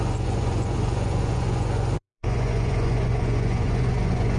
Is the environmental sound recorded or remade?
remade